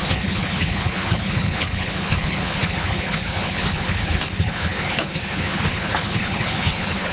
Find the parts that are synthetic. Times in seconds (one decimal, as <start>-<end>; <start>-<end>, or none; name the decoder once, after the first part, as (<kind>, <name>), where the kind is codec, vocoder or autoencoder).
0.0-7.1 (codec, HILCodec)